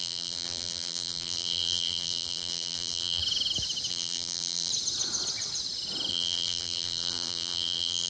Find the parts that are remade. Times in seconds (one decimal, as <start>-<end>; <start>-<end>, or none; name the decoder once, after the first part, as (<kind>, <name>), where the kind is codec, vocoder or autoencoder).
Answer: 0.0-3.2 (vocoder, BigVGAN v2); 3.9-4.7; 6.1-8.1